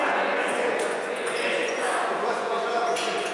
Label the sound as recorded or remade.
remade